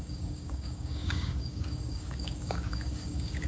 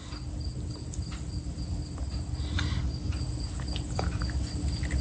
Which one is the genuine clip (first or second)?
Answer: second